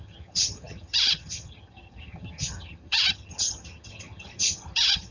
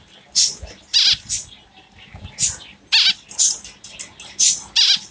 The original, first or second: second